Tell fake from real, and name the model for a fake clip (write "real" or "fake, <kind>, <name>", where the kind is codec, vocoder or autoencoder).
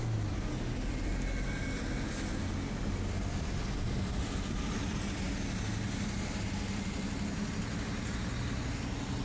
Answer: real